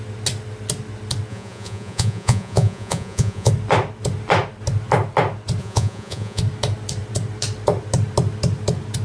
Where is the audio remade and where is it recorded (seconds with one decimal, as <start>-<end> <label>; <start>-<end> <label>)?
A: 0.0-1.3 recorded; 1.3-3.5 remade; 3.5-5.6 recorded; 5.6-6.4 remade; 6.4-9.0 recorded